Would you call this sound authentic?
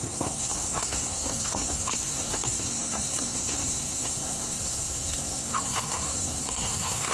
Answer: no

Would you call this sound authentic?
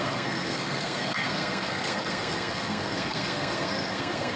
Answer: no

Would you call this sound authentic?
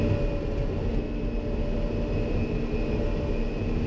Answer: yes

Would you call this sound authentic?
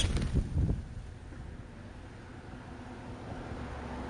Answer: yes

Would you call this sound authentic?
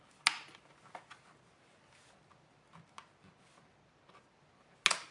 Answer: yes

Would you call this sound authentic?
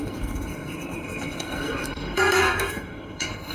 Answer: no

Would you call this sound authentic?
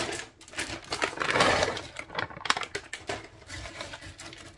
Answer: yes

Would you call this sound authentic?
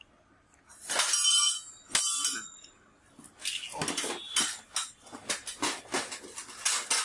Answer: yes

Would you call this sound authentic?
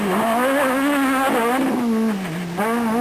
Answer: yes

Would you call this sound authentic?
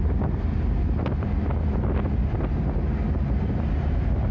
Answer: yes